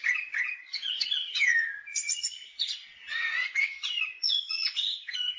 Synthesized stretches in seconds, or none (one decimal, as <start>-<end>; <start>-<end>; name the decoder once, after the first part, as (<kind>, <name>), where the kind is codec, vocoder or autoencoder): 0.0-5.4 (vocoder, Vocos)